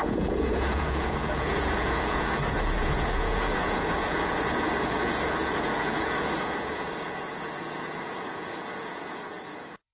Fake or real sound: fake